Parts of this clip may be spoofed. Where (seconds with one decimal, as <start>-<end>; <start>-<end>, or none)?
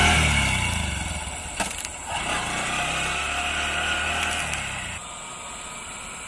none